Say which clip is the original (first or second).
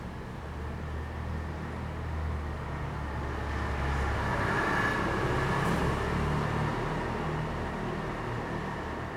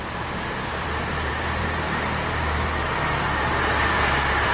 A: first